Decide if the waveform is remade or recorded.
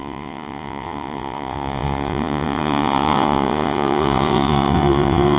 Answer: remade